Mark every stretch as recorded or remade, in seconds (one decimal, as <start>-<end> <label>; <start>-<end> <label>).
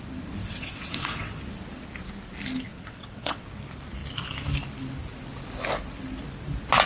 0.0-0.4 recorded; 0.4-1.4 remade; 1.4-2.7 recorded; 2.7-3.4 remade; 3.4-6.9 recorded